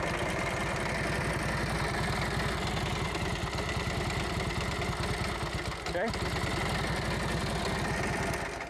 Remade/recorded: recorded